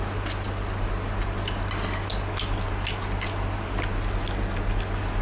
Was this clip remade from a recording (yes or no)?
no